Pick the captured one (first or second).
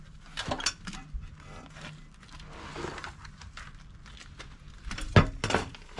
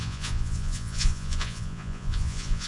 first